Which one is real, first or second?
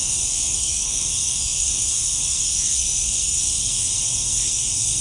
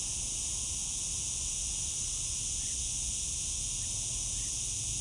second